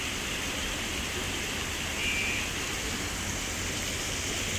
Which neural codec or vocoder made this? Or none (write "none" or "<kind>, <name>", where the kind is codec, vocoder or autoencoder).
none